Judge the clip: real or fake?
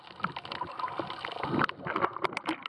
real